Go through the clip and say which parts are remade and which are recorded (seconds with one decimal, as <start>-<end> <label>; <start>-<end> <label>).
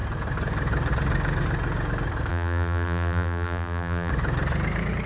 0.0-2.3 recorded; 2.3-4.1 remade; 4.1-5.1 recorded